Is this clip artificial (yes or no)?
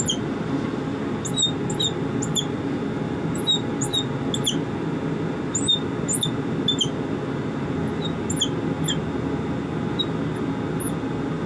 no